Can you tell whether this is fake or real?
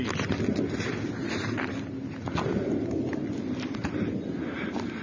real